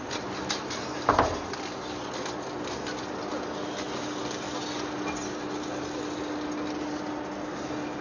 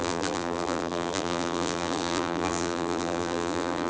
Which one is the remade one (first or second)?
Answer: second